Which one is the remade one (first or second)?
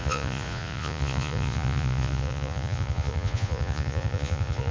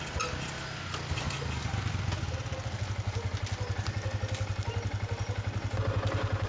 first